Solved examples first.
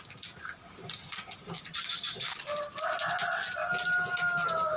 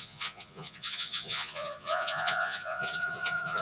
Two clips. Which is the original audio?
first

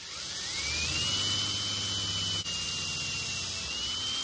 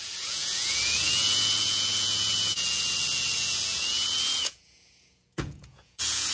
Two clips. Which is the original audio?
first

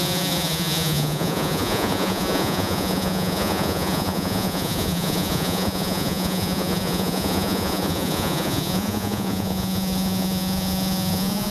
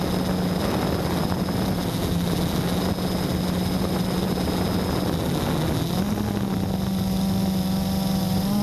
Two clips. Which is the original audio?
second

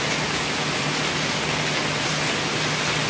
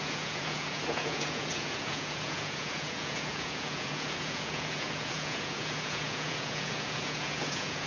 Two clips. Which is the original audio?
first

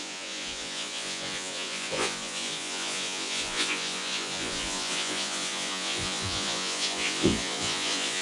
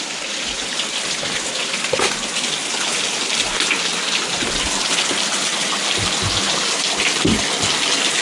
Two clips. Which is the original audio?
second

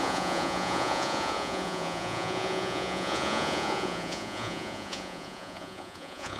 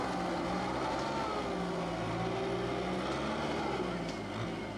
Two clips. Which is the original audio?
second